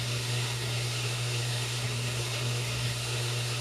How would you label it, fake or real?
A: fake